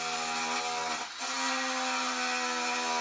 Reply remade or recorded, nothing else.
recorded